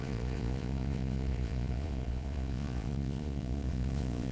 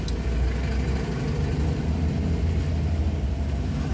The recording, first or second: second